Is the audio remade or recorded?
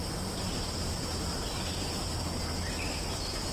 recorded